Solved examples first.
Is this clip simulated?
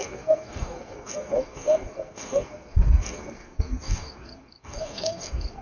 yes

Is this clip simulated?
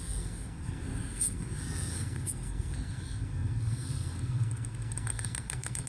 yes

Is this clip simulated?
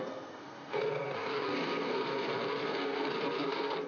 yes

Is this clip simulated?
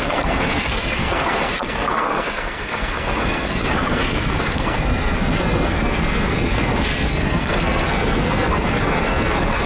yes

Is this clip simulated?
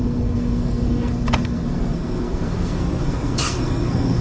yes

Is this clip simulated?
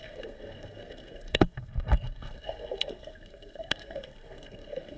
yes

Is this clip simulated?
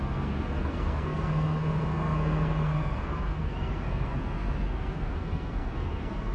yes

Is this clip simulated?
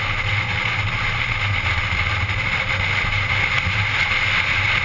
no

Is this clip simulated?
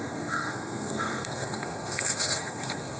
yes